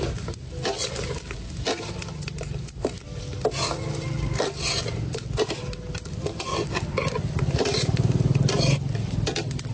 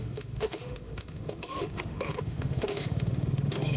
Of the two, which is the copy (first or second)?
second